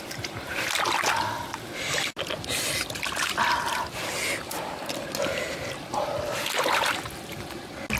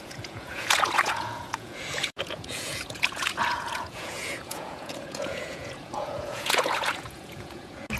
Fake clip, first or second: second